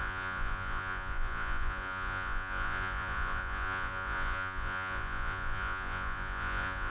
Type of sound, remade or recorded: remade